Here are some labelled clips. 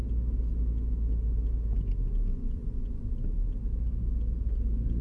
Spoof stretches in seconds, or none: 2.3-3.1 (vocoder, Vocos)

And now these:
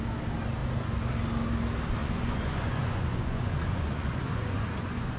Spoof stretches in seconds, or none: 2.0-5.2 (vocoder, Vocos)